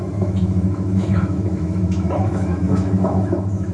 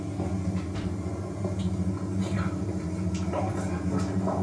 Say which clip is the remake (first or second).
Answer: first